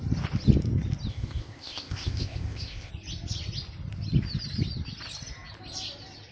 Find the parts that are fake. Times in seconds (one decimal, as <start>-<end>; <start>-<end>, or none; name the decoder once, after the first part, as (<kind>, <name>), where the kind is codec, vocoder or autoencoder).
1.1-2.9 (codec, ZipCodec)